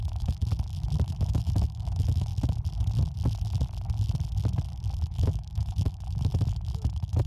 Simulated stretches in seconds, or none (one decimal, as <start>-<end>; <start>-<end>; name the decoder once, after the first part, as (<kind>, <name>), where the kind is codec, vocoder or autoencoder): 0.0-0.4 (autoencoder, DAC-VAE); 1.1-2.3; 5.0-7.3